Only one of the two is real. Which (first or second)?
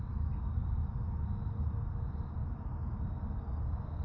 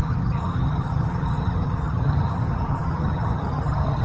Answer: first